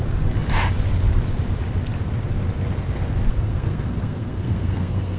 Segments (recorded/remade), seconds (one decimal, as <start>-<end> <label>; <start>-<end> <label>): 0.0-3.3 recorded; 3.3-5.2 remade